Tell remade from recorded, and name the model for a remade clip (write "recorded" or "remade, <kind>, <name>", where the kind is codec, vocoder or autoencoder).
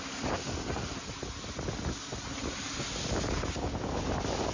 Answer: recorded